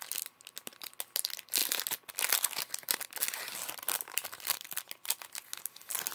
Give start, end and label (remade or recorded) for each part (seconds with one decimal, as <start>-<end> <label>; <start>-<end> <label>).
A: 0.0-6.1 recorded